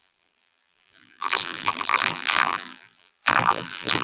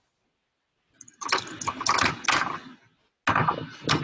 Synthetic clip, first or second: first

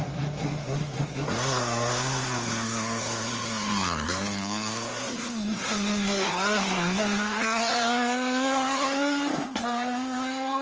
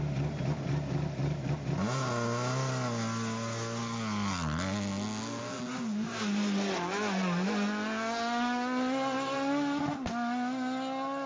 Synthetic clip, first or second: first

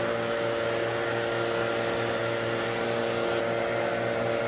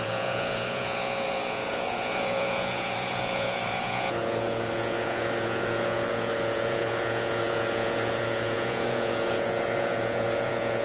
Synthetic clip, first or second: second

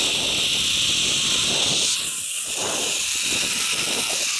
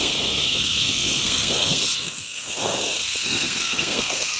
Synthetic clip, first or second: second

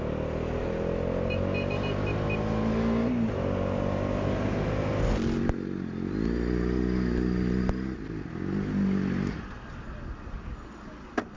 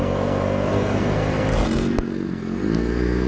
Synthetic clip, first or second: second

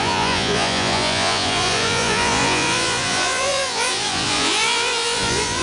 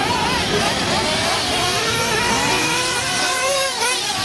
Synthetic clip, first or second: first